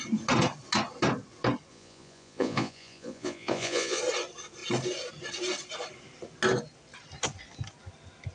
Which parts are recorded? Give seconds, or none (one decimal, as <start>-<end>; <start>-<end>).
0.0-1.7; 4.0-8.3